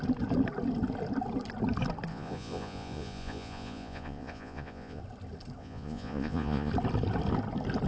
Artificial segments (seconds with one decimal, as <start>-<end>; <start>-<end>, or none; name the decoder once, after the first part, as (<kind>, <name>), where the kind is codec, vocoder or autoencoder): 2.1-5.0 (vocoder, Vocos); 5.6-6.7